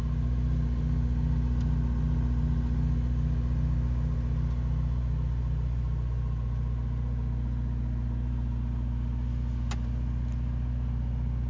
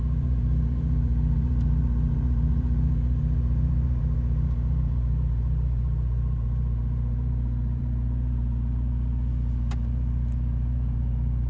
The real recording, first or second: first